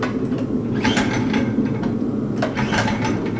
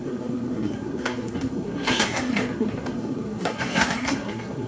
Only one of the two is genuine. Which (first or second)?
first